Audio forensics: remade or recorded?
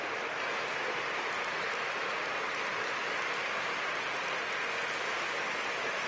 recorded